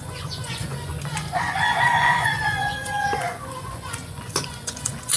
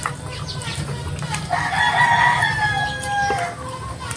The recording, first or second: second